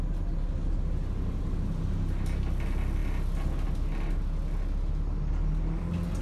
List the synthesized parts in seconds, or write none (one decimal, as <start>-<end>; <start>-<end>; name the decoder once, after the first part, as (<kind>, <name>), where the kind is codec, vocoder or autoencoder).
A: none